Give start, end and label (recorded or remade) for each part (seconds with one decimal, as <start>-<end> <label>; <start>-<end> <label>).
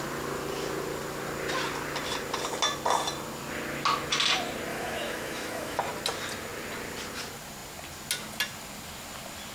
0.0-4.7 recorded; 4.7-5.8 remade; 5.8-9.5 recorded